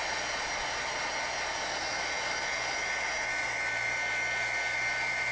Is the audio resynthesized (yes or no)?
no